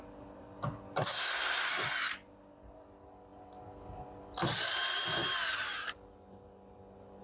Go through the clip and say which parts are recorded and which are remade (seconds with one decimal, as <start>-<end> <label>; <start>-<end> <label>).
0.0-1.1 recorded; 1.1-1.7 remade; 1.7-7.2 recorded